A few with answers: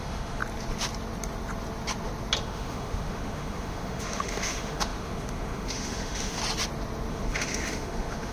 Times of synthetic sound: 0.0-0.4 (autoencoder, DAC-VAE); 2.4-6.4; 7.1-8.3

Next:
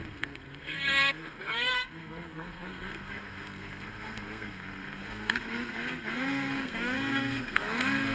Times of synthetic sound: 0.0-8.1 (codec, SNAC)

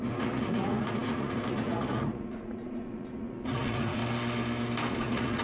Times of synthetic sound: 0.0-4.0 (vocoder, Vocos); 4.9-5.4

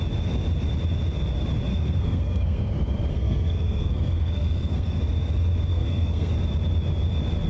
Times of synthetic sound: 1.7-2.7 (codec, SNAC); 3.1-5.0; 5.7-6.3

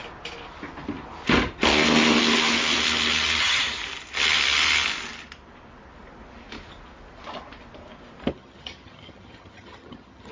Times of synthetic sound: 3.4-3.8 (vocoder, HiFi-GAN); 8.3-10.3